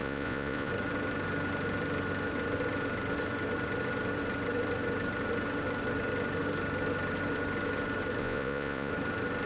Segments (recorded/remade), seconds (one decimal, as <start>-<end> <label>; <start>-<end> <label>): 0.0-0.7 remade; 0.7-8.2 recorded; 8.2-8.9 remade; 8.9-9.5 recorded